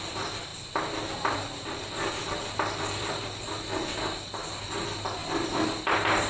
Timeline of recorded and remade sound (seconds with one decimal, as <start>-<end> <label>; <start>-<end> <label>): 0.0-6.3 recorded